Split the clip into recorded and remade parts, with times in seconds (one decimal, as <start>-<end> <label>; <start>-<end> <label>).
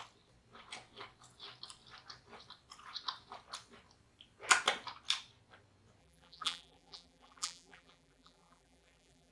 0.0-6.0 recorded; 6.0-9.3 remade